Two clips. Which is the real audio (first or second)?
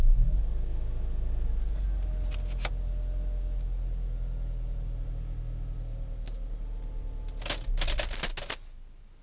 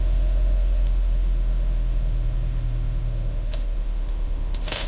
first